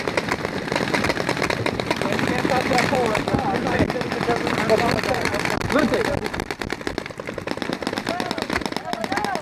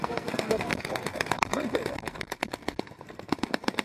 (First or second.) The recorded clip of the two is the first